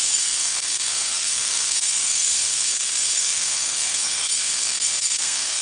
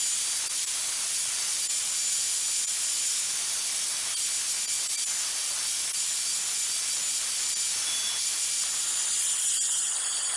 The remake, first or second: first